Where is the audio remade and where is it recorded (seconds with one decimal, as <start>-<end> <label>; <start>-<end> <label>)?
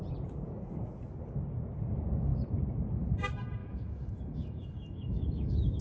0.0-3.6 recorded; 3.6-5.8 remade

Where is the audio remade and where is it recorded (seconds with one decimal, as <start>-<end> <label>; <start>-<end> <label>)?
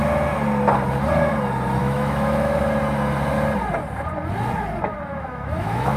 0.0-1.8 recorded; 1.8-2.6 remade; 2.6-5.1 recorded; 5.1-6.0 remade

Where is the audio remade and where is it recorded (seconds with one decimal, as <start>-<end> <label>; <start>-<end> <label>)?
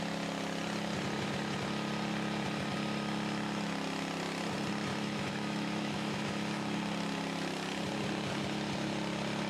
0.0-4.9 recorded; 4.9-6.8 remade; 6.8-9.5 recorded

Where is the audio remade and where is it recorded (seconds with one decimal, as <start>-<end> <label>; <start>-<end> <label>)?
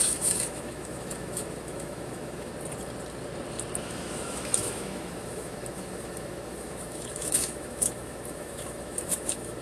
0.0-2.5 remade; 2.5-3.8 recorded; 3.8-9.6 remade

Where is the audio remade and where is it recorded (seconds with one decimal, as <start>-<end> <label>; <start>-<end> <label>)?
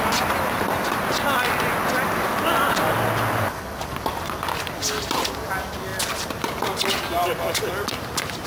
0.0-8.5 recorded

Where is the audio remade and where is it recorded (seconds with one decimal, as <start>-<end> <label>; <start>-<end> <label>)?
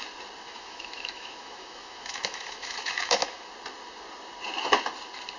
0.0-0.5 recorded; 0.5-3.4 remade; 3.4-5.4 recorded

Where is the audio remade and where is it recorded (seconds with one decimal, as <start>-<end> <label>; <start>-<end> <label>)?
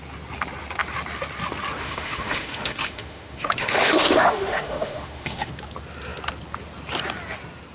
0.0-1.8 recorded; 1.8-5.5 remade; 5.5-7.7 recorded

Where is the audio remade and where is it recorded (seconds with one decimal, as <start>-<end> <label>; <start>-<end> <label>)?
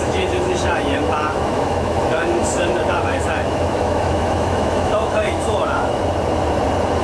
0.0-6.0 remade; 6.0-7.0 recorded